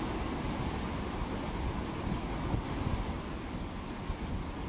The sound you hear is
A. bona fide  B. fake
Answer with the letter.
A